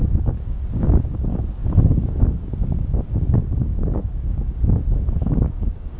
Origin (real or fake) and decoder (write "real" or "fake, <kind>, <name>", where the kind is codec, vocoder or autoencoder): fake, codec, DAC